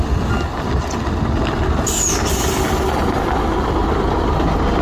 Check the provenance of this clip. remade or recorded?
recorded